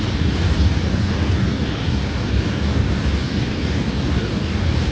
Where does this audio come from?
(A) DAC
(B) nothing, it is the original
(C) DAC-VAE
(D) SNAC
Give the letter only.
A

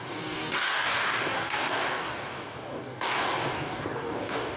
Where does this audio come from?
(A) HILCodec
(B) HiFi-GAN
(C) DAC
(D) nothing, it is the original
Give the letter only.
C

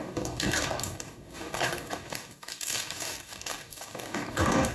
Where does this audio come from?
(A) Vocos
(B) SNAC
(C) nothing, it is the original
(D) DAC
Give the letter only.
D